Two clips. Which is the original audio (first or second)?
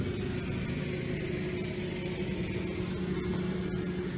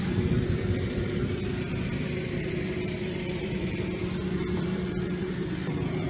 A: first